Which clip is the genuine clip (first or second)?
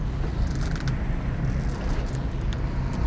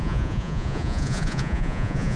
first